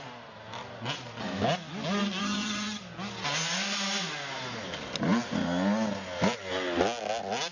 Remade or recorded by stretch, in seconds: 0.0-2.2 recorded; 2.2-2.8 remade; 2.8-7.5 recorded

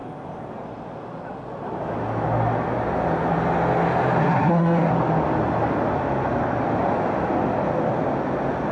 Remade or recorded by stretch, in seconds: 0.0-4.2 recorded; 4.2-4.9 remade; 4.9-8.7 recorded

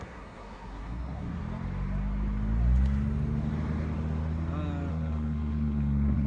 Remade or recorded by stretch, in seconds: 0.0-1.4 remade; 1.4-4.9 recorded; 4.9-6.3 remade

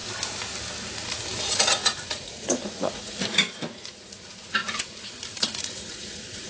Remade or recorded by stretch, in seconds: 0.0-1.4 recorded; 1.4-6.5 remade

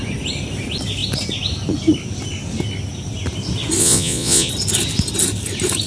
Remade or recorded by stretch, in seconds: 0.0-3.8 recorded; 3.8-4.5 remade; 4.5-5.9 recorded

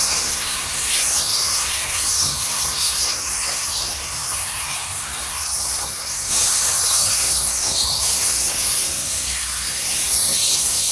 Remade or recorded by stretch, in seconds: 0.0-10.9 remade